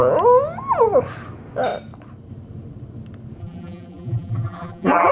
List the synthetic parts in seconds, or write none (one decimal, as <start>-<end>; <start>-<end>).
3.4-5.1